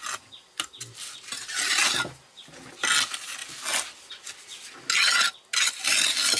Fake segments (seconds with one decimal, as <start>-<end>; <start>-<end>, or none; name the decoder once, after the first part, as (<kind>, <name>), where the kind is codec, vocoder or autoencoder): none